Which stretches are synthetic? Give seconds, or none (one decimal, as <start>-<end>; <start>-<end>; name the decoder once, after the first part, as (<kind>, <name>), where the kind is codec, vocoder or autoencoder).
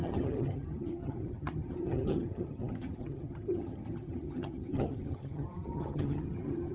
0.0-6.7 (vocoder, HiFi-GAN)